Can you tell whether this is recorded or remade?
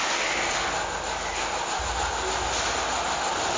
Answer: recorded